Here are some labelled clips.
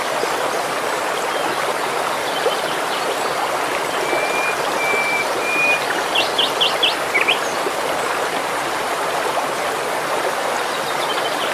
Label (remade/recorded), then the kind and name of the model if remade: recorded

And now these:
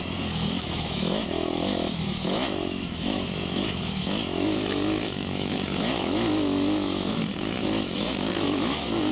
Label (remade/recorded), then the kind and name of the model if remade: remade, autoencoder, DAC-VAE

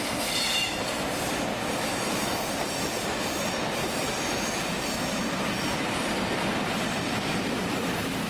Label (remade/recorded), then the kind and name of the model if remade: recorded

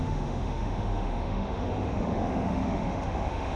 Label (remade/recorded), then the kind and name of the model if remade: remade, autoencoder, DAC-VAE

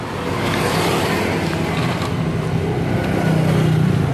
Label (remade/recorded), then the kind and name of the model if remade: recorded